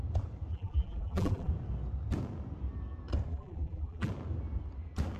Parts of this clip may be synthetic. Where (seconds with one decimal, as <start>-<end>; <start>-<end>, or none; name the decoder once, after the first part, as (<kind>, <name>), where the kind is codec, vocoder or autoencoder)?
0.5-1.5 (vocoder, BigVGAN v2); 3.3-4.1